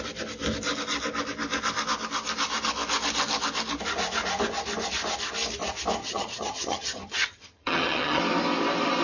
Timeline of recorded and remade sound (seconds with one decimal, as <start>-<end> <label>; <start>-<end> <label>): 0.0-6.0 recorded; 6.0-8.2 remade; 8.2-9.0 recorded